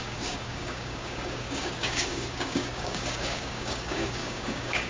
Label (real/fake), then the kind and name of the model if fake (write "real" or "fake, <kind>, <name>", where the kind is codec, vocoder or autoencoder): fake, codec, DAC